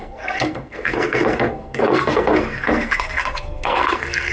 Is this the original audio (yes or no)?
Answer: no